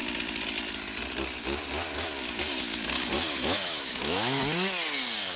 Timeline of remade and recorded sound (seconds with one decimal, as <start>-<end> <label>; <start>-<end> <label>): 0.0-3.1 recorded; 3.1-4.4 remade; 4.4-5.4 recorded